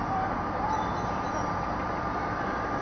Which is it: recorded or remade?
remade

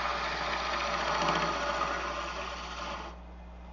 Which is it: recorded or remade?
recorded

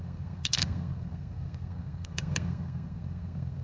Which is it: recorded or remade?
remade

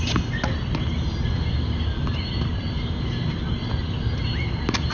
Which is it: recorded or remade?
recorded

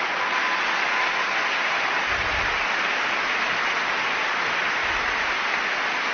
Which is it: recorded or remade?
recorded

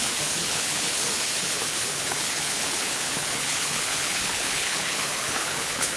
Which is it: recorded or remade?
remade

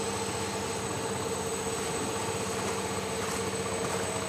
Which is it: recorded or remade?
recorded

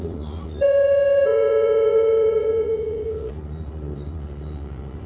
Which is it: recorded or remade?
remade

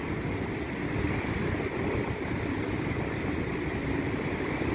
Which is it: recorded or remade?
recorded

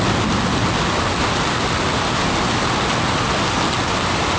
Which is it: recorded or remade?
recorded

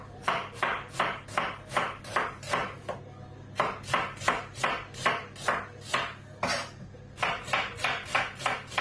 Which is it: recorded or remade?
recorded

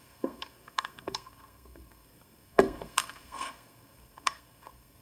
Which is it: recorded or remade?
remade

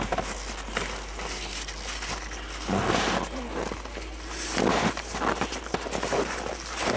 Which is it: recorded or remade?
recorded